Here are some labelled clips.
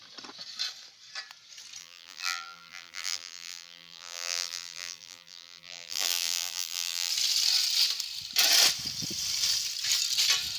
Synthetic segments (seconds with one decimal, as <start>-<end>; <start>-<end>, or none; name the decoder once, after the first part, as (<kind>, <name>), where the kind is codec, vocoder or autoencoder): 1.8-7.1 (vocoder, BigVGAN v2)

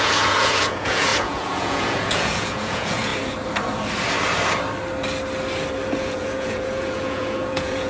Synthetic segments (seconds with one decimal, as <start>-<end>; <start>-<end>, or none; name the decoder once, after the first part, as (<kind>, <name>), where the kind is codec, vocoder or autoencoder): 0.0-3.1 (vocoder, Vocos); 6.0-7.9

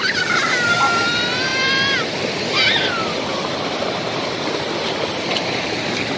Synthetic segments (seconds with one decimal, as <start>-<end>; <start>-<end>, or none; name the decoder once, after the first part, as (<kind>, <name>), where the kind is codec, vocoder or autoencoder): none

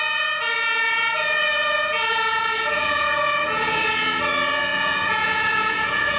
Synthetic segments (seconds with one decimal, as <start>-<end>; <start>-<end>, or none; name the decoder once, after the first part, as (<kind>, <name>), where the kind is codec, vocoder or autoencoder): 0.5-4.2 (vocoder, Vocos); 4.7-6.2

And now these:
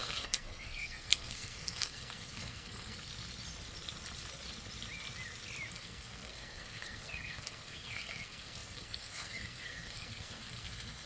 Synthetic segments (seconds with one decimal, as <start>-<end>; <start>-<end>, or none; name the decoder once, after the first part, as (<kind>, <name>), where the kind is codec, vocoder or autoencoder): 0.0-3.1 (codec, SNAC); 5.7-11.1

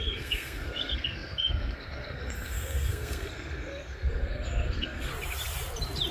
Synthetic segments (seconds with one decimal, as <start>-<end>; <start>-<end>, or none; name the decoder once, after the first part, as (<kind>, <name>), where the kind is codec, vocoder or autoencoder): 0.0-5.1 (codec, SNAC)

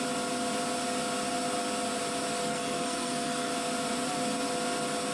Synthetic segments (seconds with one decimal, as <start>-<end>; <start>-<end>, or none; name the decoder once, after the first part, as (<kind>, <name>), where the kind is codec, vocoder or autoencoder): 2.4-3.5 (codec, SNAC)